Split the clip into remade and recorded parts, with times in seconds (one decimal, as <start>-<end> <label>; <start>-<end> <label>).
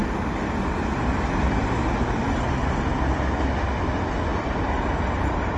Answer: 0.0-5.6 recorded